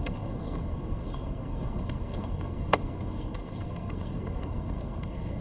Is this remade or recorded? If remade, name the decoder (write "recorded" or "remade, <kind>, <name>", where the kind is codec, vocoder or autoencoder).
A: remade, codec, SNAC